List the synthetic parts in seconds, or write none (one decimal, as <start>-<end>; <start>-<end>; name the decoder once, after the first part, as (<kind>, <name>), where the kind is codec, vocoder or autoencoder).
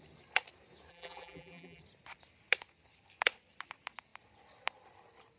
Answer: 0.9-1.8 (vocoder, BigVGAN v2)